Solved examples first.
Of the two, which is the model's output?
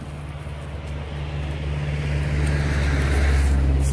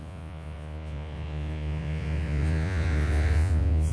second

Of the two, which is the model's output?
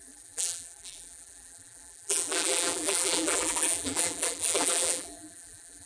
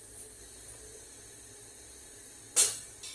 first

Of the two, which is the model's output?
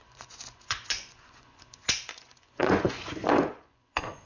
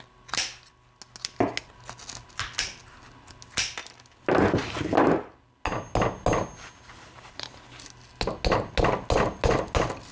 first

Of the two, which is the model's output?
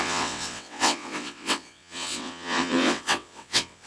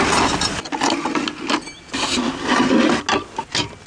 first